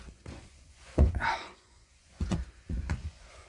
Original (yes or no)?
no